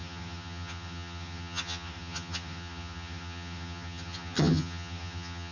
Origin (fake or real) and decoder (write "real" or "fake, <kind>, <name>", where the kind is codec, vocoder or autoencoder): fake, vocoder, HiFi-GAN